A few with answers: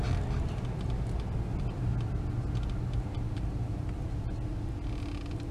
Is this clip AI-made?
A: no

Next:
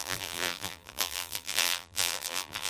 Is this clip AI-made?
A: yes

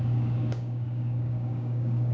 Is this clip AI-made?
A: yes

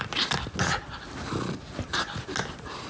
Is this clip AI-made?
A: no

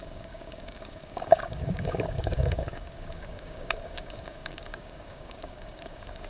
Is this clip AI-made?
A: yes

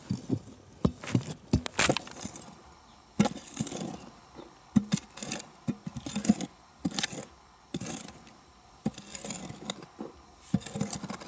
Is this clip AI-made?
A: no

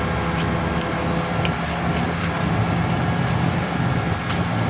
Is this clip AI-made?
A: no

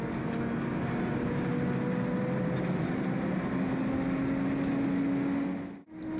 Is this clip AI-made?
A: no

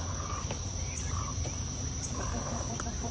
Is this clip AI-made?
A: yes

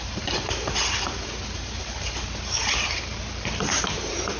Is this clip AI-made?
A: yes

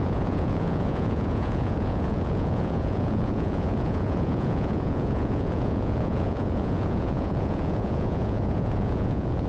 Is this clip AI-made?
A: yes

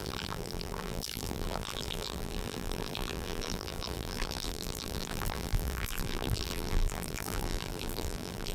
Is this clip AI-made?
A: yes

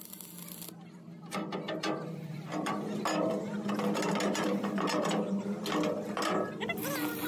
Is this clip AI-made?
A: no